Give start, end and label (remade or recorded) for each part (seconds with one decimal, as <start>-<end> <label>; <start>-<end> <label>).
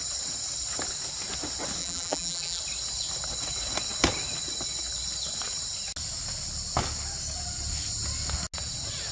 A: 0.0-1.8 recorded; 1.8-2.6 remade; 2.6-9.1 recorded